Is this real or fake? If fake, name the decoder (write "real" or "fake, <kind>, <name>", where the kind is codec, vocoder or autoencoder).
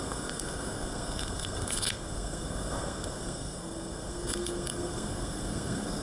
fake, codec, SNAC